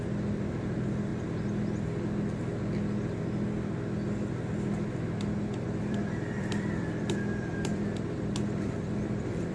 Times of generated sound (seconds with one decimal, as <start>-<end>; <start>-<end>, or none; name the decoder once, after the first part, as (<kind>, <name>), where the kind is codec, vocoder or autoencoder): 0.0-1.1 (vocoder, BigVGAN v2); 5.8-9.5